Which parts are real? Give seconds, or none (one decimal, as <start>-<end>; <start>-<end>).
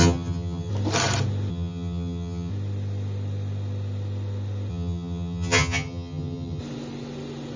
0.7-1.5; 2.5-4.7; 6.6-7.6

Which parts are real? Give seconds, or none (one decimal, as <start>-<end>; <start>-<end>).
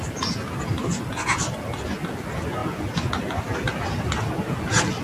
0.0-5.0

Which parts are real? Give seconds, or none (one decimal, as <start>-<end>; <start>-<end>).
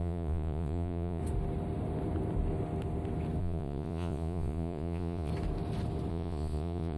1.2-3.4; 5.3-6.1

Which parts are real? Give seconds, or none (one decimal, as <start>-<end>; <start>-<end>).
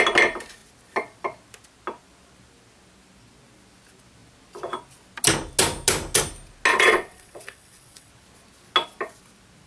0.0-6.7; 8.1-9.7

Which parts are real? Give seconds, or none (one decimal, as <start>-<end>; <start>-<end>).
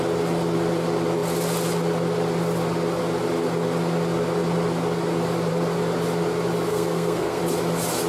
0.0-6.7; 7.4-8.1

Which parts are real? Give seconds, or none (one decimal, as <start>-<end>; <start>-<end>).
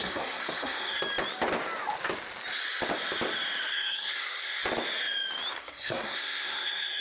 1.0-3.7; 4.6-5.5